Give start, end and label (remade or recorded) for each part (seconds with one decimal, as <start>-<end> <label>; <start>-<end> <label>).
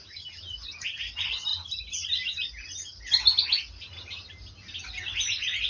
0.0-5.7 recorded